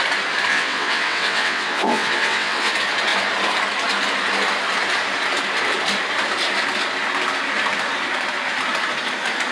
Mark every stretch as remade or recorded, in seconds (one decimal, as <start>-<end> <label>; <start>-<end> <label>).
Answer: 0.0-0.5 recorded; 0.5-2.7 remade; 2.7-9.5 recorded

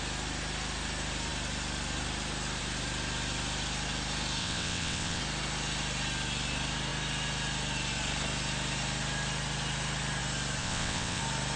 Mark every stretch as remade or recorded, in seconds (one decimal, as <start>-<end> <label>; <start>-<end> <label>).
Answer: 0.0-4.4 recorded; 4.4-5.2 remade; 5.2-10.6 recorded; 10.6-11.2 remade; 11.2-11.6 recorded

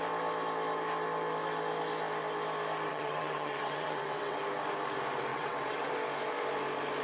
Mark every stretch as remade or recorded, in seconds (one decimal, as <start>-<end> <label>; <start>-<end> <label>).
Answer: 0.0-2.9 recorded; 2.9-4.4 remade; 4.4-5.3 recorded; 5.3-5.9 remade; 5.9-7.0 recorded

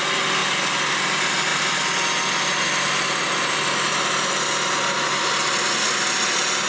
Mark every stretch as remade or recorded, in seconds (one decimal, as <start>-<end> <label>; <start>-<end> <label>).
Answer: 0.0-6.7 recorded